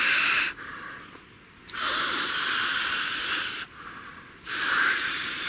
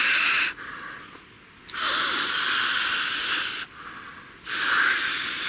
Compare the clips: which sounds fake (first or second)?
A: first